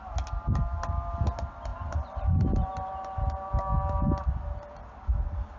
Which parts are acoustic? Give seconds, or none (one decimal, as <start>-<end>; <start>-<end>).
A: 0.0-1.7; 2.7-5.6